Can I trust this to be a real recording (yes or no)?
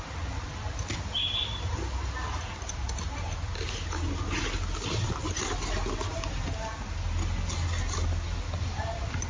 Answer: yes